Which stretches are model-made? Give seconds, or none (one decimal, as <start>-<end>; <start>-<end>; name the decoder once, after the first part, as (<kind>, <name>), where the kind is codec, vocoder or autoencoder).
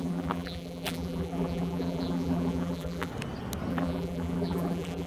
0.0-3.1 (vocoder, BigVGAN v2); 3.7-5.1